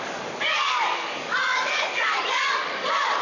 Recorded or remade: remade